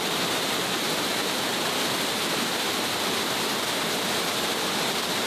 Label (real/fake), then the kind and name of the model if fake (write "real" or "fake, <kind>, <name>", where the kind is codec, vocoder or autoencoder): real